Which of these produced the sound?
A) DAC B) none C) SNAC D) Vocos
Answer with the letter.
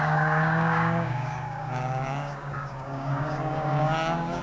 A